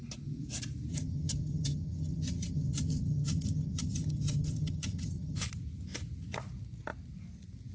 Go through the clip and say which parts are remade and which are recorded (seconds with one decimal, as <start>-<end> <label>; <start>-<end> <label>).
0.0-0.9 recorded; 0.9-5.4 remade; 5.4-7.7 recorded